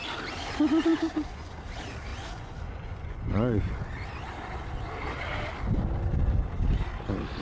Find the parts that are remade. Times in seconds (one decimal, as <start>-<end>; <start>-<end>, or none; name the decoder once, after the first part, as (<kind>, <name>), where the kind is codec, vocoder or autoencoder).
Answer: 0.9-1.5 (vocoder, Vocos); 2.1-3.7